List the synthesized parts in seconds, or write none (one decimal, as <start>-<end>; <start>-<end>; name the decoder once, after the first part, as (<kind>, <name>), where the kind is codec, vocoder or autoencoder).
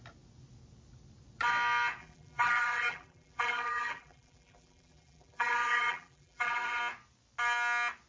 2.0-6.8 (vocoder, BigVGAN v2)